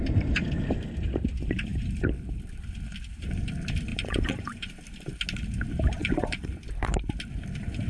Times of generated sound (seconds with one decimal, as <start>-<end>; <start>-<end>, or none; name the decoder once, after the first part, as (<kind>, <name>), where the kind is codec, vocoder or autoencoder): 3.9-4.7 (vocoder, Vocos); 6.0-6.5